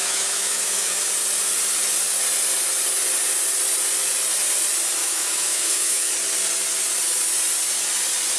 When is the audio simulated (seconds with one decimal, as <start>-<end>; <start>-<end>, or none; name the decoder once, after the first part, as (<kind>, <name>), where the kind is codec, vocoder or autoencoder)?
0.0-1.1 (autoencoder, DAC-VAE); 5.0-6.1